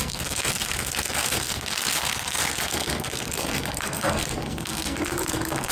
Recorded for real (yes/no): no